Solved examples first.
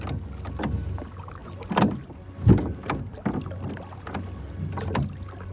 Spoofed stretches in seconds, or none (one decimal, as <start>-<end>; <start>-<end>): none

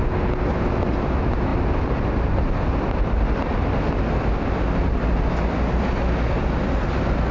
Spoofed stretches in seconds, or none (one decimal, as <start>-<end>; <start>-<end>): none

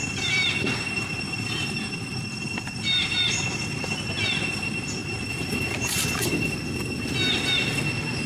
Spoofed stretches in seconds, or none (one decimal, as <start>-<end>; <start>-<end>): 0.0-3.8; 5.0-6.6

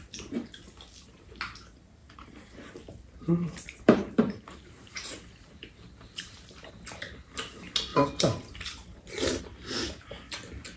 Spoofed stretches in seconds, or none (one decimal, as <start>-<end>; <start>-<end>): 2.0-6.7; 7.9-9.4

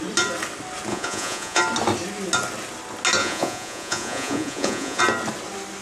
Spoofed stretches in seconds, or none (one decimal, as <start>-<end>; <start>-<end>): 0.9-1.6; 3.2-5.0